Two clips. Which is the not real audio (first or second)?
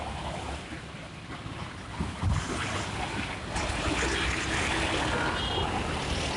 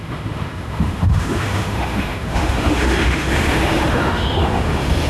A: second